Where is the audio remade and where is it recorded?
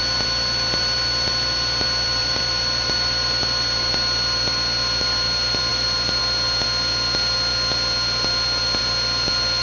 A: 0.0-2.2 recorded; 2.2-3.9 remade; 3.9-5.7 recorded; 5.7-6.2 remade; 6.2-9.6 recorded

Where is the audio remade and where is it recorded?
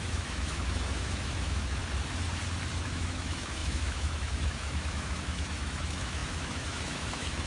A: 0.0-1.8 remade; 1.8-2.7 recorded; 2.7-7.5 remade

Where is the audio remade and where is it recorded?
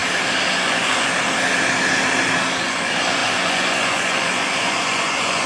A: 0.0-0.5 recorded; 0.5-1.1 remade; 1.1-2.6 recorded; 2.6-5.5 remade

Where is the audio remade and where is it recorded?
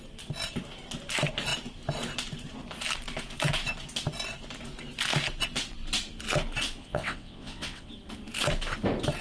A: 0.0-6.8 recorded; 6.8-7.9 remade; 7.9-9.2 recorded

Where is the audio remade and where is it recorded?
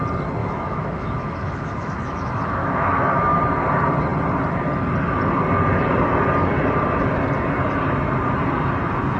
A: 0.0-0.4 recorded; 0.4-3.4 remade; 3.4-9.2 recorded